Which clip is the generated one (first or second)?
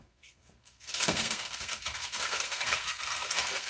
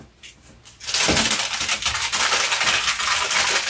first